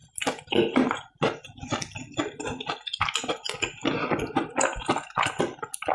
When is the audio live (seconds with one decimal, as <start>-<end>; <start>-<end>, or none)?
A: 0.0-5.9